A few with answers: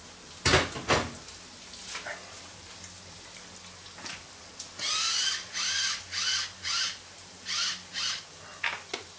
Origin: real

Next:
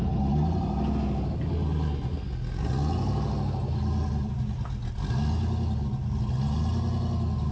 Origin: real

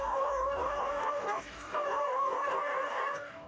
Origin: fake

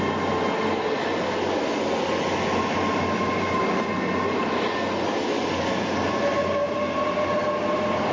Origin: real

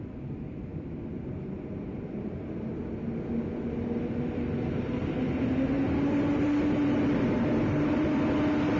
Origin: real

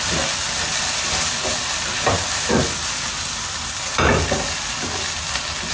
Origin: real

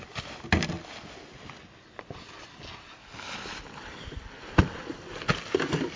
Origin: real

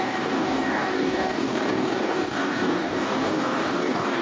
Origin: fake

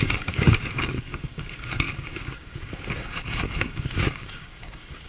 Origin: fake